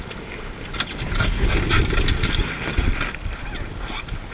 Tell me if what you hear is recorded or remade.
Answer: recorded